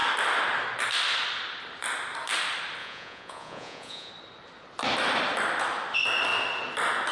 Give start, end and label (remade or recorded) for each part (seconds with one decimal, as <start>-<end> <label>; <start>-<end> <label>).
0.0-2.8 recorded; 2.8-4.1 remade; 4.1-7.1 recorded